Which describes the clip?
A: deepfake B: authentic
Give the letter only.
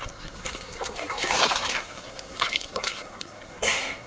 A